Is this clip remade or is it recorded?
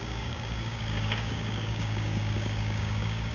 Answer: remade